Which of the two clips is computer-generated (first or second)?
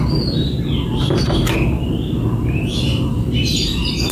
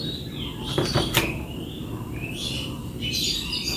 second